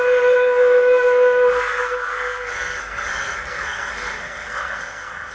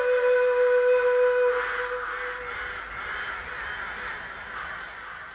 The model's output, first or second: first